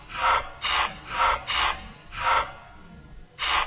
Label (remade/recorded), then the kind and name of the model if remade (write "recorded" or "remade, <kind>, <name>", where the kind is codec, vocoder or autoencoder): recorded